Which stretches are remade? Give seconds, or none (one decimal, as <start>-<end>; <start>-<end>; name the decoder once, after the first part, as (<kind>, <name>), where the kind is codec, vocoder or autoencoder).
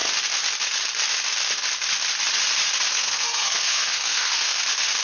2.9-4.6 (codec, SNAC)